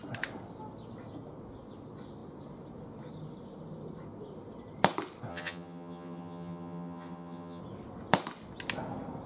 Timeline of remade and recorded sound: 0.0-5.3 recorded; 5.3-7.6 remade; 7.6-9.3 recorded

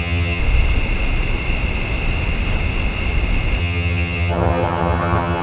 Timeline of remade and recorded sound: 0.0-0.4 remade; 0.4-3.6 recorded; 3.6-5.4 remade

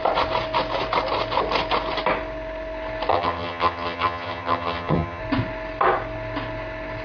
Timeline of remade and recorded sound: 0.0-3.1 recorded; 3.1-5.2 remade; 5.2-7.0 recorded

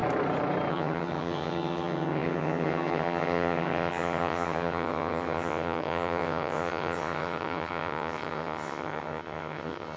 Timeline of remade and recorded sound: 0.0-0.7 recorded; 0.7-10.0 remade

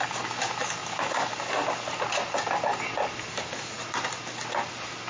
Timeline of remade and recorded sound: 0.0-5.1 recorded

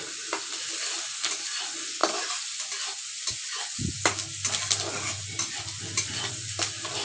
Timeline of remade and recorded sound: 0.0-7.0 recorded